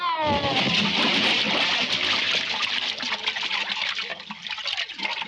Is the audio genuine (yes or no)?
yes